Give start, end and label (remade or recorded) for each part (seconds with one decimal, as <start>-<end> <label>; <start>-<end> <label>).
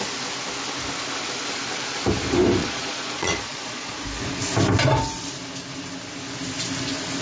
0.0-2.6 recorded; 2.6-3.9 remade; 3.9-7.2 recorded